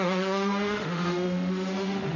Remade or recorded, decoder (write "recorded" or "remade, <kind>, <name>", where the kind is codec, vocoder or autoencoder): remade, autoencoder, DAC-VAE